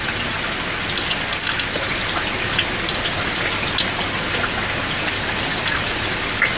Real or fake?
real